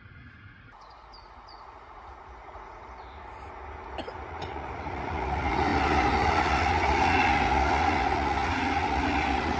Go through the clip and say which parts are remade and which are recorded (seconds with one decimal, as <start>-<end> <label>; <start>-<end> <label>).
0.0-2.8 remade; 2.8-4.3 recorded; 4.3-9.6 remade